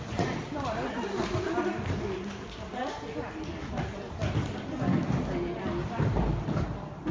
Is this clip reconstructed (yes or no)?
no